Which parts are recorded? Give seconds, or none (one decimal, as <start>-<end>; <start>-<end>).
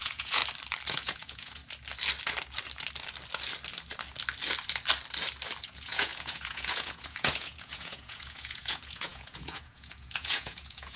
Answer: 0.4-0.9; 1.6-5.6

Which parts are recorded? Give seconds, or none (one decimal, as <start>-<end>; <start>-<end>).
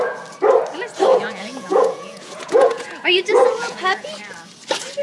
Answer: 0.0-1.1; 4.1-5.0